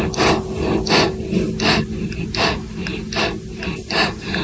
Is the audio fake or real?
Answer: real